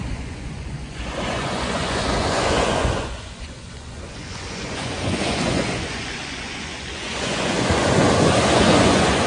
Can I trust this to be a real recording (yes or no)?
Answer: no